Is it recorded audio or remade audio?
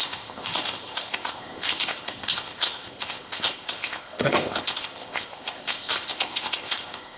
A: remade